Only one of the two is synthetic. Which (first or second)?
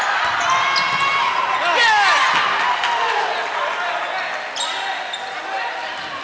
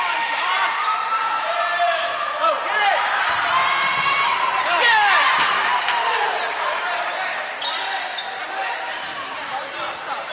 second